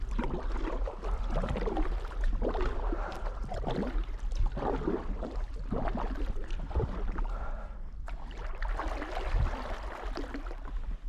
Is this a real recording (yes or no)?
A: yes